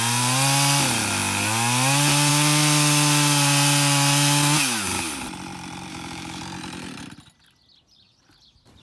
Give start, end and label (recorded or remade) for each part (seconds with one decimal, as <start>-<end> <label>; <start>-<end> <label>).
0.0-5.9 recorded; 5.9-6.4 remade; 6.4-8.8 recorded